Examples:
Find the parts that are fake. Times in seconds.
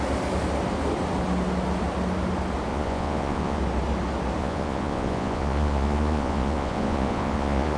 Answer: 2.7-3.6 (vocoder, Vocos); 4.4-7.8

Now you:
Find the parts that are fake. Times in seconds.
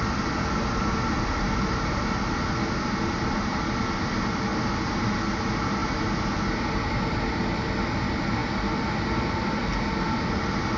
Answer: none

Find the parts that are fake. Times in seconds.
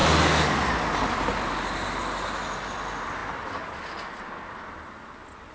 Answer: none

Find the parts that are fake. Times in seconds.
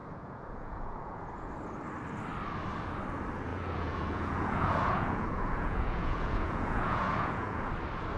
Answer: 0.0-1.5 (vocoder, Vocos); 3.5-7.7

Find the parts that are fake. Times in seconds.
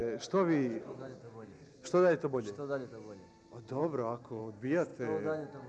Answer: none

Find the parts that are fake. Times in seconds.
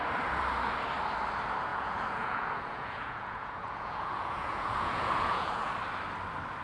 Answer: 1.7-5.7 (vocoder, Vocos)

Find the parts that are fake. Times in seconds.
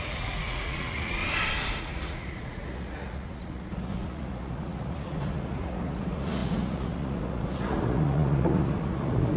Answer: 0.0-1.2 (vocoder, Vocos); 1.8-9.4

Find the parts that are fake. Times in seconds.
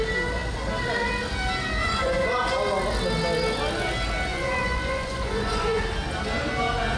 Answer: 1.8-2.4 (vocoder, Vocos); 4.3-5.8